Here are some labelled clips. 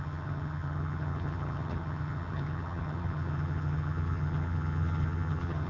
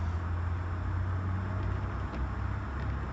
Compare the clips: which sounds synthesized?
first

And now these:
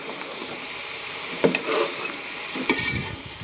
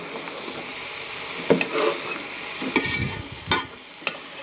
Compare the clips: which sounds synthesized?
first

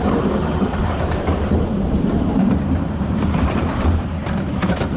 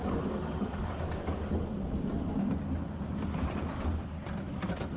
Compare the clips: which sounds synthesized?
first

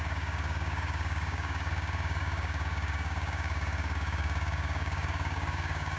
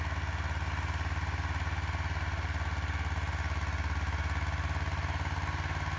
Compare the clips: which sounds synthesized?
first